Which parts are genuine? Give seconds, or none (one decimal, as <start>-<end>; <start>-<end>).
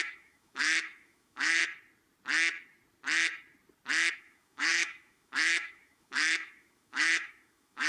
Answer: 1.6-4.1